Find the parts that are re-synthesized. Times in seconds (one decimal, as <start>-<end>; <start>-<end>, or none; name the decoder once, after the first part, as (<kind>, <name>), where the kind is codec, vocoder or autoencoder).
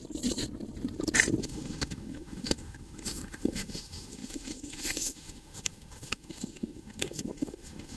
1.4-8.0 (autoencoder, DAC-VAE)